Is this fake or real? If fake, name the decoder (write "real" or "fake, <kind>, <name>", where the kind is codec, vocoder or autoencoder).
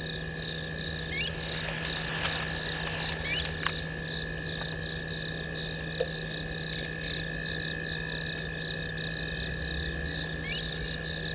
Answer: real